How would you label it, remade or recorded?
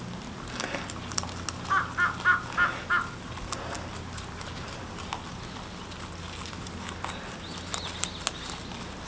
recorded